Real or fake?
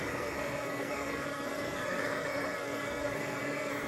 fake